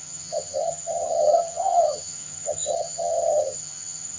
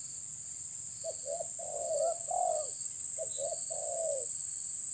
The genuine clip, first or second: second